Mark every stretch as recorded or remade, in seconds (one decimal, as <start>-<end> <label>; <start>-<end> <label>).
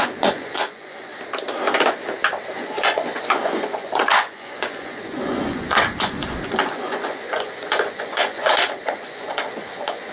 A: 0.0-1.1 remade; 1.1-2.5 recorded; 2.5-10.1 remade